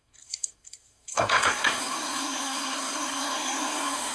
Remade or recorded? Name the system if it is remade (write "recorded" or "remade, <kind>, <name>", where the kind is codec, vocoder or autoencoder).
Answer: remade, codec, SNAC